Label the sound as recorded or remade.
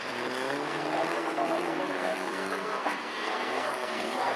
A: remade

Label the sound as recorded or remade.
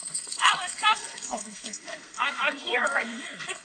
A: remade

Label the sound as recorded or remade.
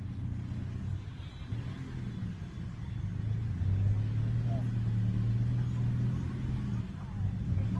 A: recorded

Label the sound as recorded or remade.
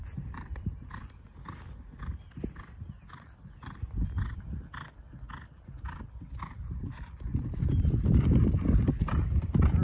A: recorded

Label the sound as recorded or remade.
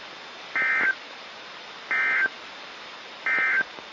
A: recorded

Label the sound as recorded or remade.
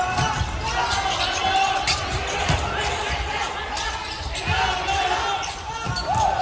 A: recorded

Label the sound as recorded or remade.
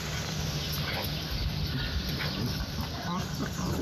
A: recorded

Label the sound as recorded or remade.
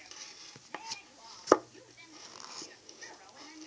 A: recorded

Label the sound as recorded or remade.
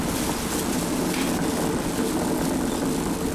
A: recorded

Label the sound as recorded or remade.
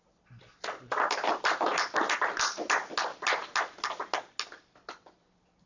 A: recorded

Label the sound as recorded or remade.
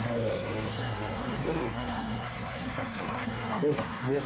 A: remade